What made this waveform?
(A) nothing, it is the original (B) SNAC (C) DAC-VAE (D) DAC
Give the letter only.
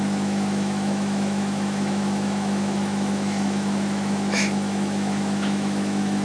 C